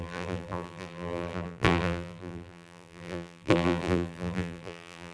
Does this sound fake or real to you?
fake